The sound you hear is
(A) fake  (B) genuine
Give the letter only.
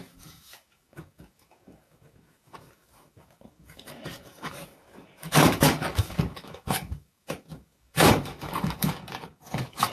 A